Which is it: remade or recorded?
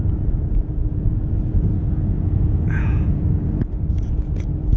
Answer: remade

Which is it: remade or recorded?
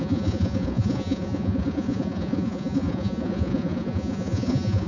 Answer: remade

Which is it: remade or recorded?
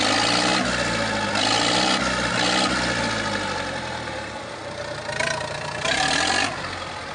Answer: recorded